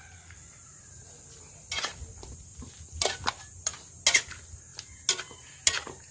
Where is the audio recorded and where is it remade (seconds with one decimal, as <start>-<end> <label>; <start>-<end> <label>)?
0.0-2.5 recorded; 2.5-3.8 remade; 3.8-6.1 recorded